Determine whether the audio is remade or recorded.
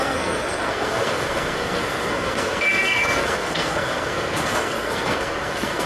remade